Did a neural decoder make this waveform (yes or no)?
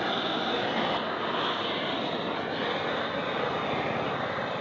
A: no